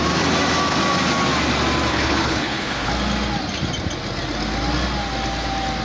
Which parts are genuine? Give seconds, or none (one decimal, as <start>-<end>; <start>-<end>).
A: 0.0-1.9; 2.9-5.8